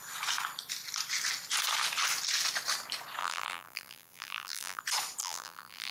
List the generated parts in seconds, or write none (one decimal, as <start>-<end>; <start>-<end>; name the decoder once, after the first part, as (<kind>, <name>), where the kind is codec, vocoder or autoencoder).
3.2-4.8 (vocoder, BigVGAN v2); 5.2-5.9